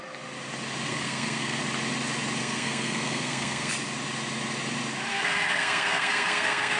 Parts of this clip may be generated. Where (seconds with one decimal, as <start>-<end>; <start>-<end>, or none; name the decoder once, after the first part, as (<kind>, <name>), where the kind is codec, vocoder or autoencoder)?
0.9-1.6 (codec, SNAC); 2.4-3.7; 5.1-6.8